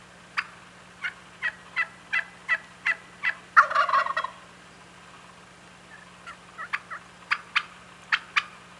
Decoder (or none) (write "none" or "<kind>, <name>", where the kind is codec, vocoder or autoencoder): none